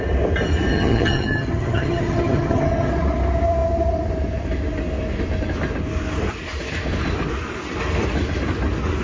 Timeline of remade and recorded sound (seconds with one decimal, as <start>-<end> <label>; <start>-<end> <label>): 0.0-0.7 recorded; 0.7-2.9 remade; 2.9-9.0 recorded